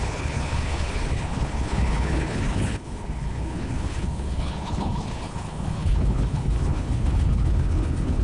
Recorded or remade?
remade